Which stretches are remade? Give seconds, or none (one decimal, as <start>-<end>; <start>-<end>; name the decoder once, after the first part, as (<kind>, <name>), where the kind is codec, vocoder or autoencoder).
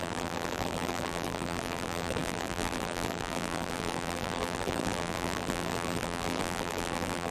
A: 0.0-7.3 (vocoder, BigVGAN v2)